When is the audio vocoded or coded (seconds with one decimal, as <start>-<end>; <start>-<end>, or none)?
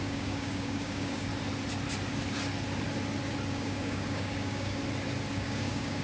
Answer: 0.0-1.3; 3.5-4.8; 5.3-6.0